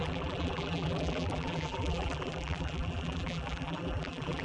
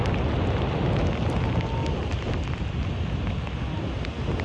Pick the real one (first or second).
second